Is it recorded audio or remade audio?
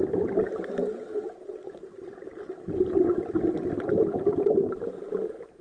recorded